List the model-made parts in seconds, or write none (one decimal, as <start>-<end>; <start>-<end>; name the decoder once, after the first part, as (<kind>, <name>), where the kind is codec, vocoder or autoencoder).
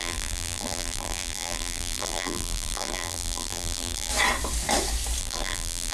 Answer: 0.0-4.1 (vocoder, BigVGAN v2); 5.2-5.9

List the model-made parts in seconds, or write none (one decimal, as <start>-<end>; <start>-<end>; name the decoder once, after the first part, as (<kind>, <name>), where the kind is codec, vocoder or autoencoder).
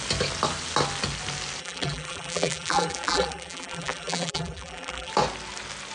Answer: 1.6-5.1 (vocoder, BigVGAN v2)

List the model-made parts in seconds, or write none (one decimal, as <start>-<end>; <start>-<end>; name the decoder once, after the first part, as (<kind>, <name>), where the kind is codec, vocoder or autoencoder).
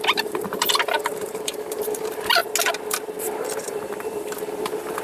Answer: 0.0-2.4 (vocoder, BigVGAN v2); 3.2-5.0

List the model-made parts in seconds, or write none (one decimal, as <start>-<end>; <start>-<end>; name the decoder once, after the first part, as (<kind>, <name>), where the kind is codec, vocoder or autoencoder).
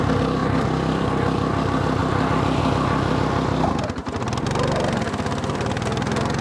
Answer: 0.4-1.1 (vocoder, BigVGAN v2); 2.0-2.6; 4.0-6.4